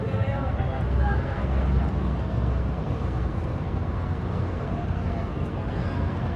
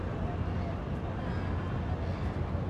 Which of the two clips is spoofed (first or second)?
first